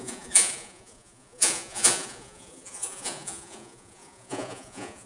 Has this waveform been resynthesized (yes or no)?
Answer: yes